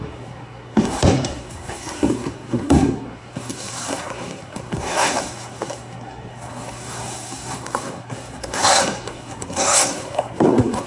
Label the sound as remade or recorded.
remade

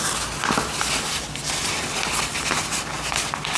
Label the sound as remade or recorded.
recorded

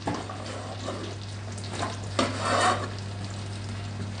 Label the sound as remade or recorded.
recorded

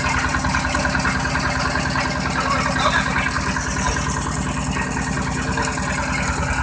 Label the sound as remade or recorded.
recorded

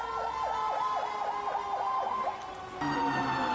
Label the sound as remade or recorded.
recorded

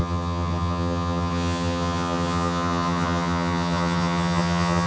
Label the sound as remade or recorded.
remade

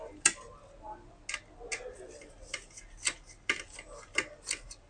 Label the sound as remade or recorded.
recorded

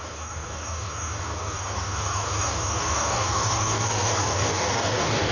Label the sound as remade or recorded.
remade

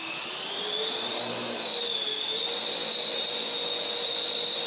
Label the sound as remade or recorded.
remade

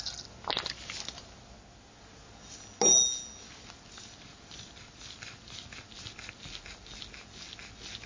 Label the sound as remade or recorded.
recorded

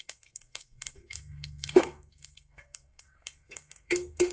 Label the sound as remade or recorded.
remade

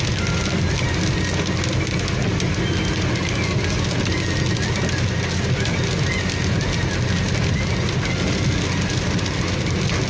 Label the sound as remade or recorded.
recorded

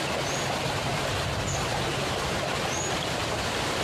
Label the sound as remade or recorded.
recorded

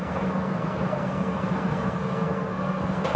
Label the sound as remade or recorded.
remade